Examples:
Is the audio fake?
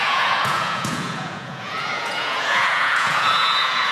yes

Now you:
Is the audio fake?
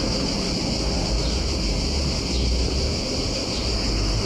no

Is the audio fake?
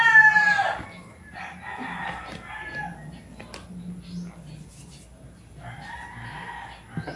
no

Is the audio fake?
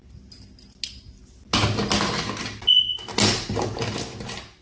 no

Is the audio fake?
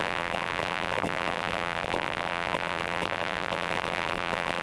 yes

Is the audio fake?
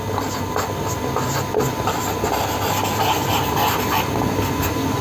no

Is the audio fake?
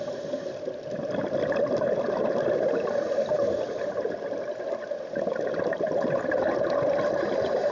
no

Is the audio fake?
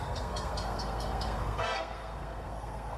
yes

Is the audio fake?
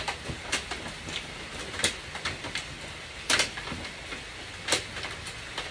no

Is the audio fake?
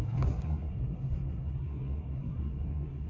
yes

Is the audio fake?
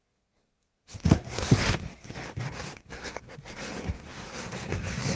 yes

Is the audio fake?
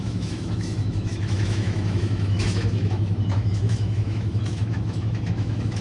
yes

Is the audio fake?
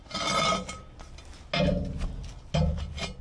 no